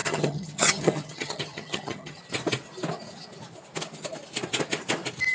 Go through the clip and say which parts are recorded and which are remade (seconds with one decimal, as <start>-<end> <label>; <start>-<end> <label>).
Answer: 0.0-2.2 remade; 2.2-5.3 recorded